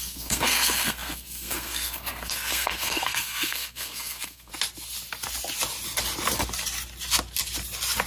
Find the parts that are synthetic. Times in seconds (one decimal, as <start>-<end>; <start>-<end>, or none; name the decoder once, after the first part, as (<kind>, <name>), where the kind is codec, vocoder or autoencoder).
0.0-4.5 (codec, SNAC)